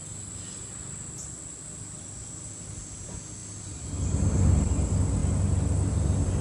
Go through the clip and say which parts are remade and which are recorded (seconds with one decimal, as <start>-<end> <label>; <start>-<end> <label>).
0.0-6.4 recorded